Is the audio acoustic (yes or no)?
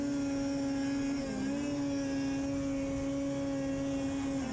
yes